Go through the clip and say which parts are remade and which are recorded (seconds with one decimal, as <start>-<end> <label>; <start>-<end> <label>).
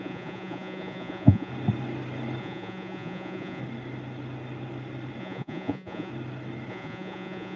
0.0-1.5 remade; 1.5-2.4 recorded; 2.4-3.6 remade; 3.6-5.2 recorded; 5.2-6.1 remade; 6.1-6.7 recorded; 6.7-7.6 remade